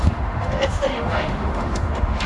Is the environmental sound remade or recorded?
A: remade